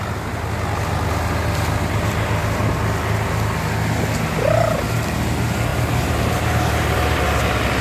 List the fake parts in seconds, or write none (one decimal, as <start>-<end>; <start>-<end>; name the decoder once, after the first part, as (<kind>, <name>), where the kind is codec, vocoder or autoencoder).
5.7-7.2 (vocoder, BigVGAN v2)